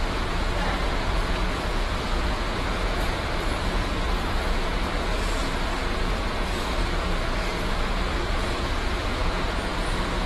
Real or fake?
fake